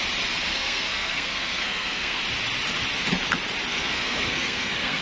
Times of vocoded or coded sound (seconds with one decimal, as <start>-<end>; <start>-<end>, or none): 0.5-2.2; 3.7-5.0